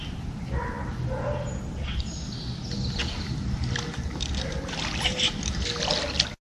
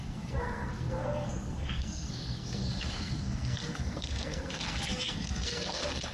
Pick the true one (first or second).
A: first